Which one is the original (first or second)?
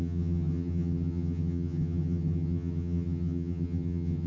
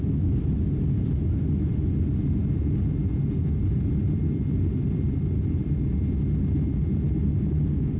second